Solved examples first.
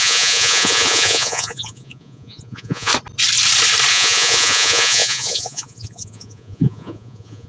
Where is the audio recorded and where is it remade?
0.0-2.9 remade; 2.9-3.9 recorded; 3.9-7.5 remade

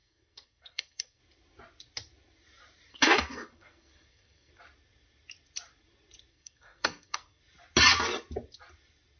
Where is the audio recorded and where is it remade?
0.0-1.2 remade; 1.2-2.9 recorded; 2.9-4.5 remade; 4.5-6.3 recorded; 6.3-7.4 remade; 7.4-9.2 recorded

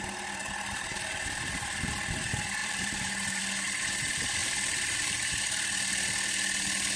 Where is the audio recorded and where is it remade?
0.0-2.6 recorded; 2.6-3.4 remade; 3.4-4.4 recorded; 4.4-5.4 remade; 5.4-7.0 recorded

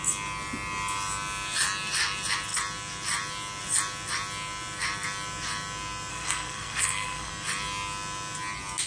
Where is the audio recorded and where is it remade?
0.0-6.1 recorded; 6.1-7.3 remade; 7.3-8.9 recorded

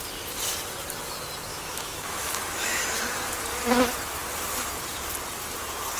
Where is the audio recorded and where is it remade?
0.0-1.5 recorded; 1.5-2.8 remade; 2.8-6.0 recorded

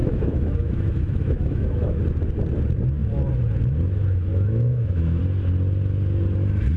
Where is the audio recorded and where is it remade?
0.0-2.0 remade; 2.0-4.3 recorded; 4.3-5.2 remade; 5.2-6.8 recorded